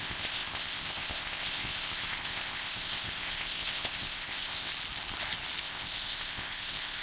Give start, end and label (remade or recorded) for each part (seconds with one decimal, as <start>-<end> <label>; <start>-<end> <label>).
0.0-4.7 remade; 4.7-5.6 recorded; 5.6-7.0 remade